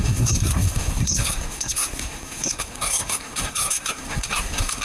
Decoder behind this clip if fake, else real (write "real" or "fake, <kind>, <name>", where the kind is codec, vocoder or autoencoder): fake, codec, SNAC